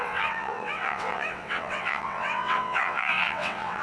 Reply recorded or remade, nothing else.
remade